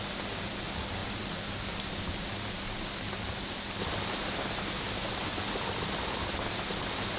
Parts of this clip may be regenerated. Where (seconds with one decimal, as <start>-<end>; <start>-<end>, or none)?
none